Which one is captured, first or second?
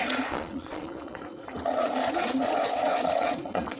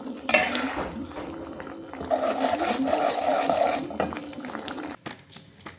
second